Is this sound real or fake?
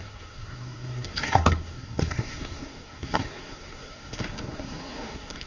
fake